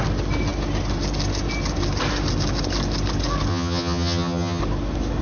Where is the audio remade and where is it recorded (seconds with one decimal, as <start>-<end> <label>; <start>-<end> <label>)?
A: 0.0-3.5 recorded; 3.5-4.6 remade; 4.6-5.2 recorded